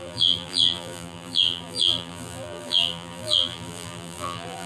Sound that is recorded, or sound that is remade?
remade